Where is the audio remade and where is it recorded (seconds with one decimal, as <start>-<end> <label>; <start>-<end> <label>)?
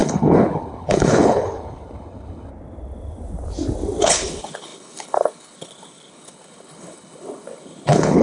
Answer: 0.0-2.5 remade; 2.5-4.0 recorded; 4.0-8.2 remade